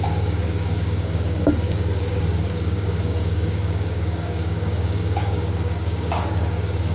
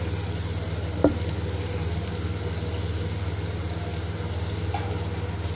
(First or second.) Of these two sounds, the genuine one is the second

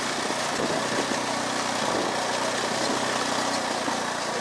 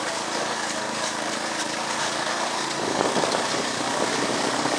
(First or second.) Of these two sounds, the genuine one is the first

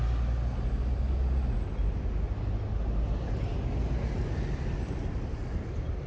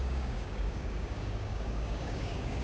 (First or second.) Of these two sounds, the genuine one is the first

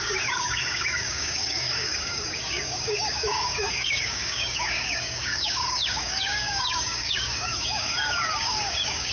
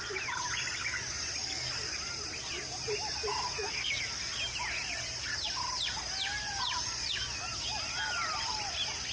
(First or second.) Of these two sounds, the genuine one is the second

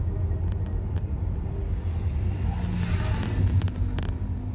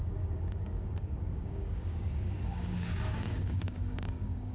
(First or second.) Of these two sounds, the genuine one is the first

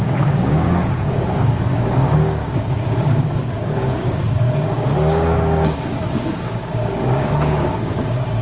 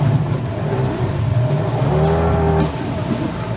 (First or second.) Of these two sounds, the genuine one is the second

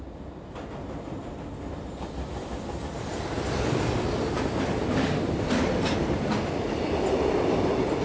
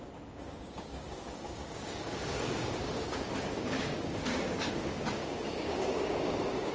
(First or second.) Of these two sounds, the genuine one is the first